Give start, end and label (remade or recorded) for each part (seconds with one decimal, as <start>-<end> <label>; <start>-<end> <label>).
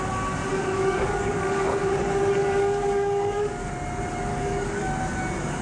0.0-0.5 recorded; 0.5-3.7 remade; 3.7-4.3 recorded; 4.3-4.9 remade; 4.9-5.6 recorded